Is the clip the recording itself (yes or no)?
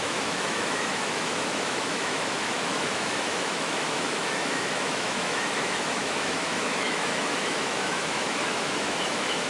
no